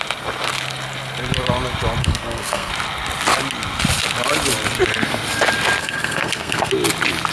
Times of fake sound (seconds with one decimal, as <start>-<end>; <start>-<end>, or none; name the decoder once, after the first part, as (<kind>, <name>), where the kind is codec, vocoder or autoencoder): 2.0-2.7 (codec, SNAC); 5.8-6.7